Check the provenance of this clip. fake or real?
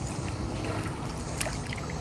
real